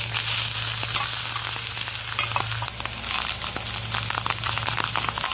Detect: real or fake real